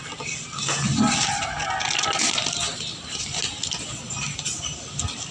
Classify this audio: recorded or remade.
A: recorded